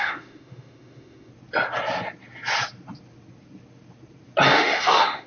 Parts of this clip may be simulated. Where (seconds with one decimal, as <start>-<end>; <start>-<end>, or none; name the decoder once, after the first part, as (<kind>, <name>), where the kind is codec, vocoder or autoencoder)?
0.0-1.3 (autoencoder, DAC-VAE); 4.5-5.3